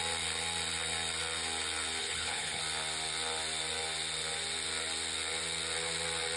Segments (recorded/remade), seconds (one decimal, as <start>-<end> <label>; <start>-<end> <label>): 0.0-2.0 recorded; 2.0-2.6 remade; 2.6-6.4 recorded